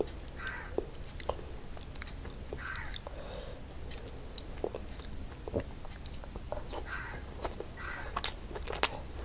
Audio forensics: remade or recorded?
recorded